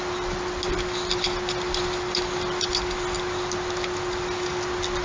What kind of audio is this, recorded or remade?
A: recorded